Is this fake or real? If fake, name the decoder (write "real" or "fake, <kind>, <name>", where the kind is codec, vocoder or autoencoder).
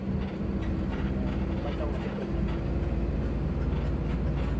real